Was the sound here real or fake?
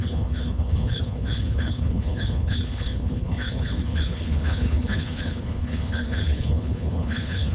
fake